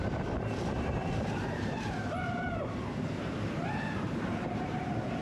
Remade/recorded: remade